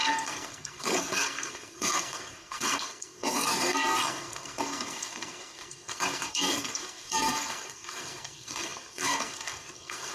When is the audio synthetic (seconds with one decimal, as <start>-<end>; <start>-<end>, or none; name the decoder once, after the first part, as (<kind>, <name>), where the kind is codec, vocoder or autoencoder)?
0.0-10.1 (codec, SNAC)